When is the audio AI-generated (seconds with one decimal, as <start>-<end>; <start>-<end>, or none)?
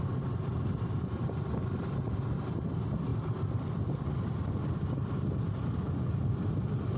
0.0-7.0